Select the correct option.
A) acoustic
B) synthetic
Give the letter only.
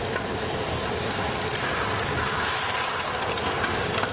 A